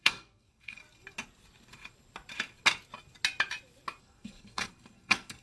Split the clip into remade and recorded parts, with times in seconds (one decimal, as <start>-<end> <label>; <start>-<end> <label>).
0.0-0.8 remade; 0.8-4.0 recorded; 4.0-5.4 remade